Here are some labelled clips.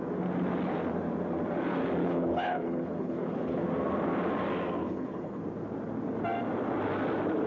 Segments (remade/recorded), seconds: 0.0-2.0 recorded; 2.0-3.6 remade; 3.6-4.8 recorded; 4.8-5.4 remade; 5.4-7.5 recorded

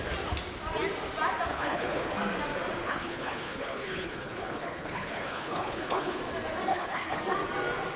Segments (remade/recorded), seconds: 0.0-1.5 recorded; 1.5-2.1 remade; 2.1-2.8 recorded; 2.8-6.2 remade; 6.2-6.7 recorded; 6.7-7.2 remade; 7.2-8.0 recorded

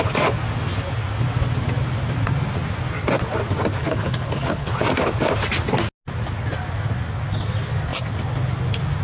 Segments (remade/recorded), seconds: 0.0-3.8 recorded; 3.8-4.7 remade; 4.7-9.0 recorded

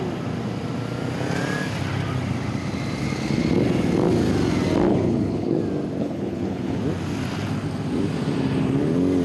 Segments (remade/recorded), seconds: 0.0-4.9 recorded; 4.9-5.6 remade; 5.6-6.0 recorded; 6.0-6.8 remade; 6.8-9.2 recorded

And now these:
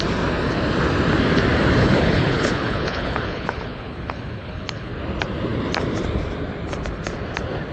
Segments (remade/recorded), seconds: 0.0-1.8 recorded; 1.8-4.9 remade; 4.9-7.7 recorded

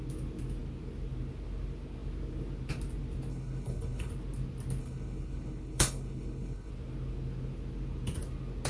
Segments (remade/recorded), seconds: 0.0-3.3 recorded; 3.3-4.1 remade; 4.1-4.8 recorded; 4.8-6.7 remade; 6.7-8.7 recorded